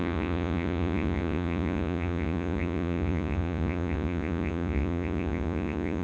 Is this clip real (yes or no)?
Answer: no